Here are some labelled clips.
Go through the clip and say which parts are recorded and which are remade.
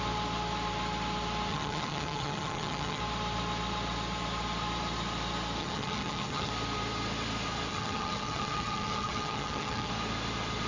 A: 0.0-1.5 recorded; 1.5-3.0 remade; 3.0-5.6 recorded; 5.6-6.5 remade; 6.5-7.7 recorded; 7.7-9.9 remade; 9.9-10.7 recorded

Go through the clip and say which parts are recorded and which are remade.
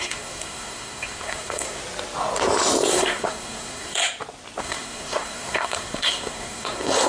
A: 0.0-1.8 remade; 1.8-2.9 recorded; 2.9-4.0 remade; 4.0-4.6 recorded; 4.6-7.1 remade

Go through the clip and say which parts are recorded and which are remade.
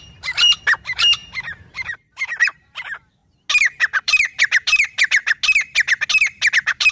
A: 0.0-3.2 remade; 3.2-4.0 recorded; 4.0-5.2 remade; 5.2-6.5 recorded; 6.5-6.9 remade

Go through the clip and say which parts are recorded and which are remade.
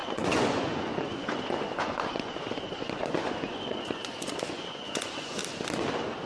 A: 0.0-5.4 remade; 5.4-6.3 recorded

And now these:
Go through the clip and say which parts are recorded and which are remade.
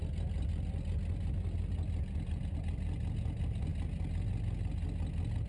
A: 0.0-5.5 recorded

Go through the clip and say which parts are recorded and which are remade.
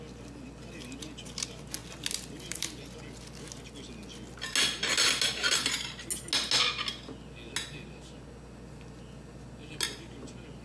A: 0.0-10.6 recorded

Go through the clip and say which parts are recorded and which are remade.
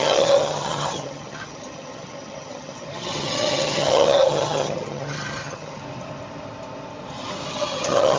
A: 0.0-5.8 remade; 5.8-7.5 recorded; 7.5-8.2 remade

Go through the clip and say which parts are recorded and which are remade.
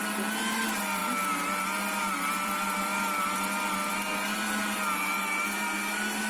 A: 0.0-6.3 recorded